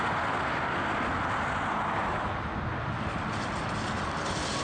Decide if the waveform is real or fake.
real